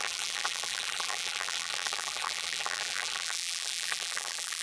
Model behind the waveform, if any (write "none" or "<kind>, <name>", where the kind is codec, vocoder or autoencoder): vocoder, BigVGAN v2